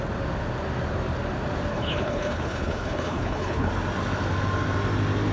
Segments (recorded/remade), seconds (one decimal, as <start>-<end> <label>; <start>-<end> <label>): 0.0-1.7 recorded; 1.7-3.7 remade; 3.7-5.3 recorded

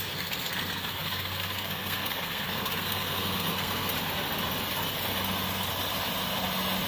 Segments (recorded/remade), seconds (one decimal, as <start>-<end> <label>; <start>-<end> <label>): 0.0-3.9 remade; 3.9-6.9 recorded

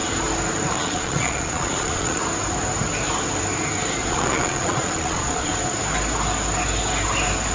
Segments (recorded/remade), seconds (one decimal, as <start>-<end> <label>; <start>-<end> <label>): 0.0-0.7 recorded; 0.7-2.2 remade; 2.2-4.1 recorded; 4.1-5.5 remade; 5.5-7.5 recorded

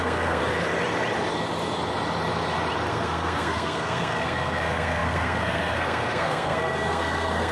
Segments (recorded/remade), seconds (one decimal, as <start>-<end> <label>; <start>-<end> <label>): 0.0-0.4 remade; 0.4-2.9 recorded; 2.9-7.5 remade